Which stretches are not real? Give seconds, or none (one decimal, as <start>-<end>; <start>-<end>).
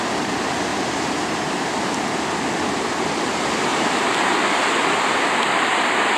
0.7-1.7; 3.7-4.4